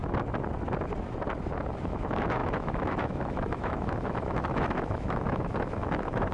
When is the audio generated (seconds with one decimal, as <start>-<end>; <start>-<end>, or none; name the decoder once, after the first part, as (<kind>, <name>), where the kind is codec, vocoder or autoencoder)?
1.8-6.3 (autoencoder, DAC-VAE)